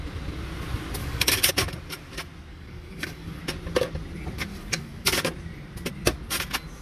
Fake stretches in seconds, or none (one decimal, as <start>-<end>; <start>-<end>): 1.0-1.5; 2.5-3.4; 4.5-5.2